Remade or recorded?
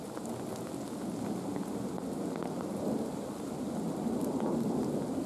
recorded